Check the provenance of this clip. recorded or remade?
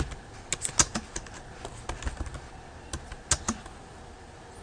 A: recorded